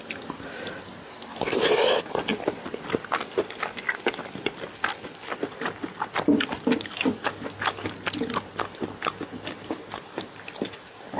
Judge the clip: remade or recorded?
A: recorded